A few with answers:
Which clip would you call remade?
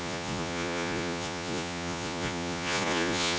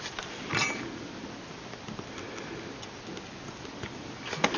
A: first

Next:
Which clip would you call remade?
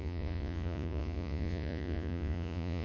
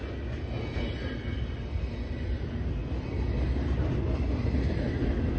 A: first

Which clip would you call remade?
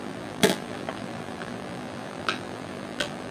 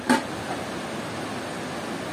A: first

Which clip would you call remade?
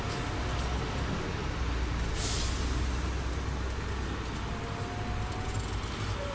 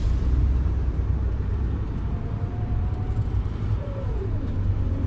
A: second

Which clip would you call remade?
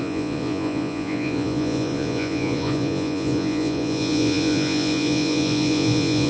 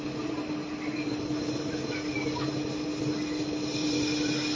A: first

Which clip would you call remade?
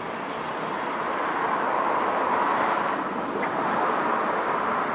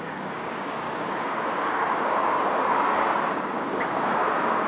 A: second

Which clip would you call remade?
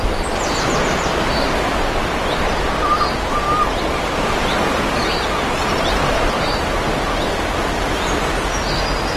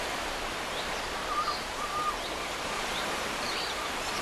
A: second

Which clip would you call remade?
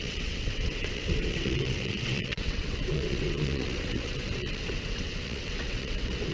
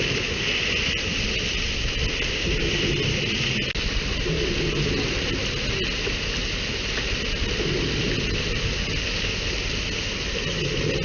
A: first